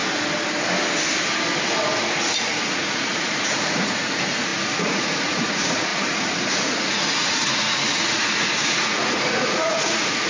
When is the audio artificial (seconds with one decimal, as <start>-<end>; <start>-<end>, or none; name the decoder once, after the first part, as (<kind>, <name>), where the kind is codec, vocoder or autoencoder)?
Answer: 2.6-10.3 (vocoder, Vocos)